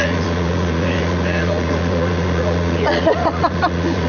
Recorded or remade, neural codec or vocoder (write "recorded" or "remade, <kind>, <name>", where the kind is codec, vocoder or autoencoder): remade, vocoder, Vocos